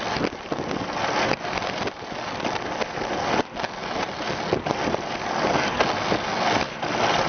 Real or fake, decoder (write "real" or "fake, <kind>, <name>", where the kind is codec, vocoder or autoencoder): real